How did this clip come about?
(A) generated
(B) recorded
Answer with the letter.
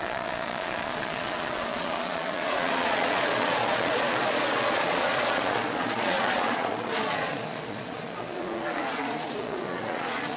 A